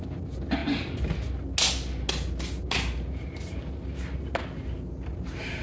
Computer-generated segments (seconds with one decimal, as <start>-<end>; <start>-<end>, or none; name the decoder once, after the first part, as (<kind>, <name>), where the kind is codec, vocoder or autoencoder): none